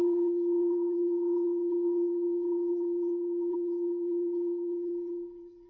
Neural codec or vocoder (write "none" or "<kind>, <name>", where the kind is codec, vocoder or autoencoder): codec, SNAC